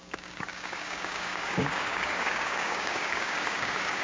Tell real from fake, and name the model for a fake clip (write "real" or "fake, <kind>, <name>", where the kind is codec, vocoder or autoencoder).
fake, codec, DAC